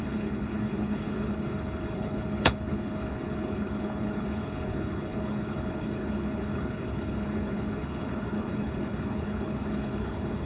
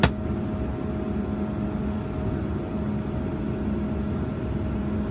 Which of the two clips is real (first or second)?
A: second